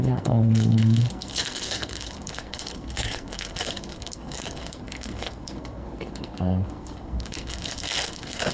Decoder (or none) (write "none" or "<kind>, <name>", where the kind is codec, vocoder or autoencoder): codec, SNAC